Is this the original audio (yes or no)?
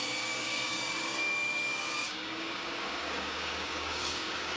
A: no